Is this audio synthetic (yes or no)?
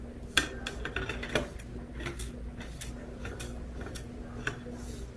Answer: no